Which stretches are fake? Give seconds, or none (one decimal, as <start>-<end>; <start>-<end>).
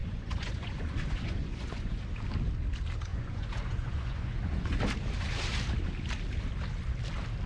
0.0-2.0; 3.1-4.8